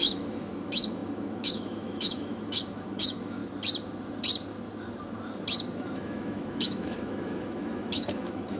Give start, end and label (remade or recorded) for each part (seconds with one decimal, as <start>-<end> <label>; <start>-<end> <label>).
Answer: 0.0-3.4 remade; 3.4-5.8 recorded; 5.8-8.6 remade